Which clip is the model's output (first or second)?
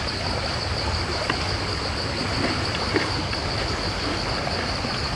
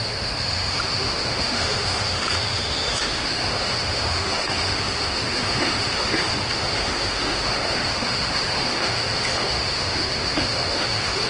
second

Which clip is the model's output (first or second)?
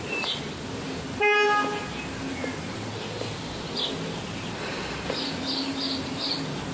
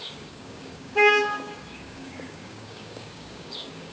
second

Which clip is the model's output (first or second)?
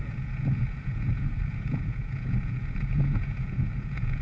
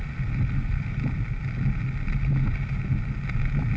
first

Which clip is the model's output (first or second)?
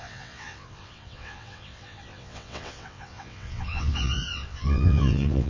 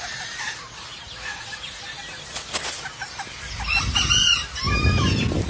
first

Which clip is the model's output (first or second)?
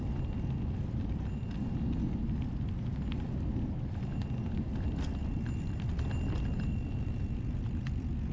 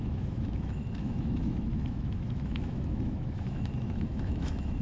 second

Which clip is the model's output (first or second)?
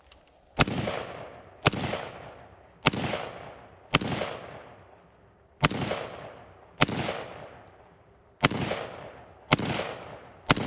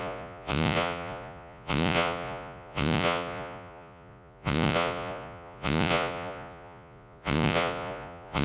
second